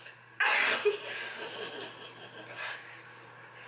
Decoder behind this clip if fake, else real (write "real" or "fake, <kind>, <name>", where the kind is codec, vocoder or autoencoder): real